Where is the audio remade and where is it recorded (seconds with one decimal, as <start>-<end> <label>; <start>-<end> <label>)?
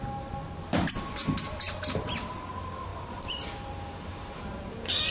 0.0-2.9 recorded; 2.9-4.1 remade; 4.1-5.1 recorded